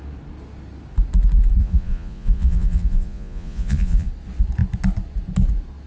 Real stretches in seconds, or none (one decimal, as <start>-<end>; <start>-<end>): 0.0-1.6; 4.1-5.9